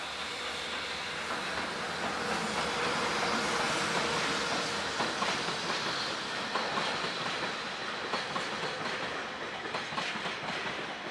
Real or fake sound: real